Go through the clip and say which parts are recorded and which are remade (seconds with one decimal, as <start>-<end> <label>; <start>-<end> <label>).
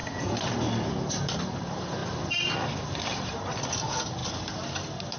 0.0-5.2 remade